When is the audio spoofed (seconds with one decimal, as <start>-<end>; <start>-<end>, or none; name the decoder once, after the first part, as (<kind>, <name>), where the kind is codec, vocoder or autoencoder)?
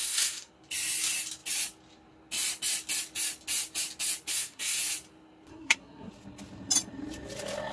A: 0.0-0.5 (codec, SNAC); 4.3-4.8; 5.5-6.1